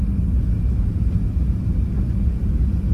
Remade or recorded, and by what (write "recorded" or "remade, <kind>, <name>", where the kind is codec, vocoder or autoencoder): recorded